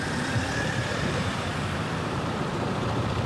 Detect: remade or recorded remade